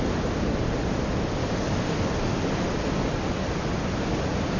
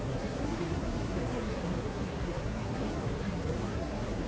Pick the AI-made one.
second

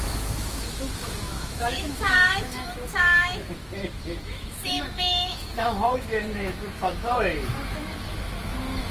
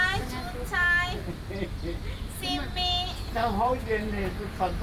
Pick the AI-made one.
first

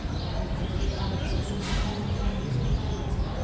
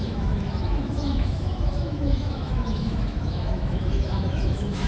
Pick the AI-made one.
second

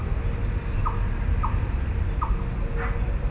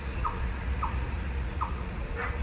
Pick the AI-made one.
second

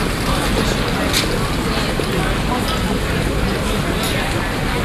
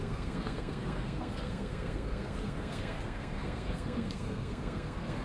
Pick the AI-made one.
second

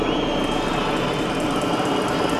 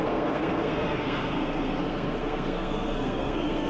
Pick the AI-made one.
second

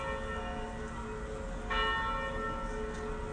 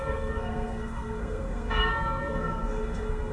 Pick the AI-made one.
second